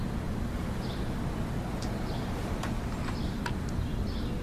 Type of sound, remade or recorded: recorded